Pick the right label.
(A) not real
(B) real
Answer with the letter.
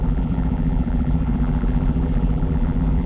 A